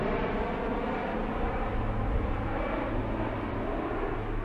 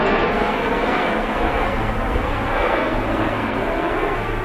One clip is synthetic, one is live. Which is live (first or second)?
first